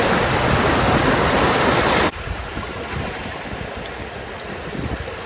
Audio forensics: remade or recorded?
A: recorded